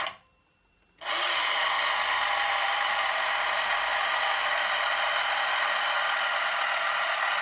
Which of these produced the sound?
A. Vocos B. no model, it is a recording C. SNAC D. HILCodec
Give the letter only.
B